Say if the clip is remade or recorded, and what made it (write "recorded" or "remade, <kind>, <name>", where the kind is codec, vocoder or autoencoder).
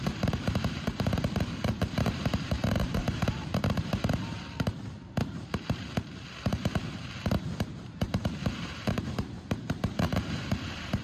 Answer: remade, vocoder, BigVGAN v2